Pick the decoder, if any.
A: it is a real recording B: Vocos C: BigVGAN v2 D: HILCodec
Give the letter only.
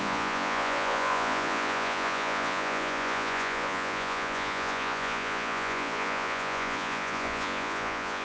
B